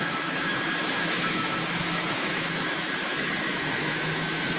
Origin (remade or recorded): remade